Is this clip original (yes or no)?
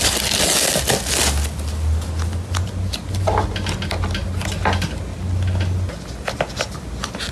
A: yes